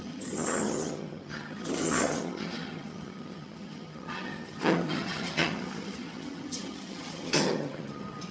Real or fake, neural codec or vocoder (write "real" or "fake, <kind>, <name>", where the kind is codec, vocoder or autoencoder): fake, vocoder, HiFi-GAN